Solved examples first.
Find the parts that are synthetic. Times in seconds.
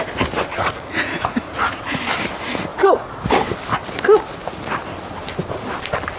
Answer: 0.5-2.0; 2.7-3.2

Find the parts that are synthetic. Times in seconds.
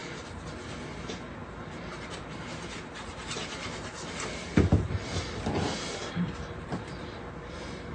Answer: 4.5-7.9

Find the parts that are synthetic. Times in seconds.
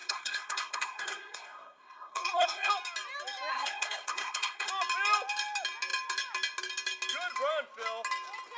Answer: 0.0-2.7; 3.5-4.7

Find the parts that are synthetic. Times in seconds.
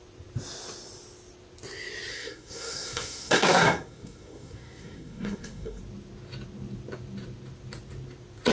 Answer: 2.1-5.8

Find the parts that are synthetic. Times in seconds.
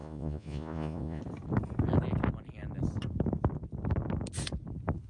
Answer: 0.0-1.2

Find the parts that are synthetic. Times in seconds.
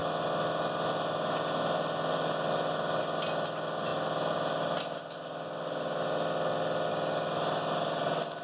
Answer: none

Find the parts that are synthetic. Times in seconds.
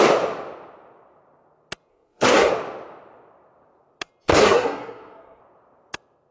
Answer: 1.9-2.5; 4.3-5.4